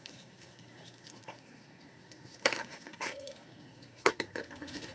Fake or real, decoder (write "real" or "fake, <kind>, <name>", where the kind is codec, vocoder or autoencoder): fake, codec, SNAC